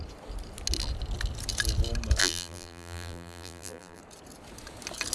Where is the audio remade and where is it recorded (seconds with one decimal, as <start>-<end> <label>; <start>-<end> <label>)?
0.0-2.2 recorded; 2.2-4.0 remade; 4.0-5.1 recorded